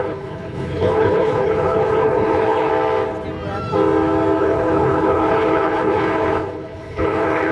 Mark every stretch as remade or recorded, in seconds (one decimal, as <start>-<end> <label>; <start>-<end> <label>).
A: 0.0-2.7 remade; 2.7-4.4 recorded; 4.4-7.5 remade